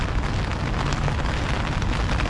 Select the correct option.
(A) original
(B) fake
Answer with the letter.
A